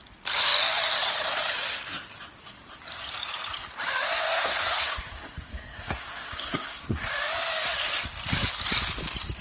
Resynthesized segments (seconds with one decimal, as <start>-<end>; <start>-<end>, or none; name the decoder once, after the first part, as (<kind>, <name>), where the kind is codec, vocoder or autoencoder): 4.3-7.1 (codec, SNAC)